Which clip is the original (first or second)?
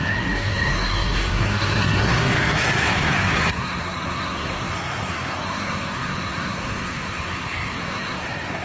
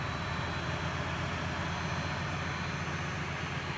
second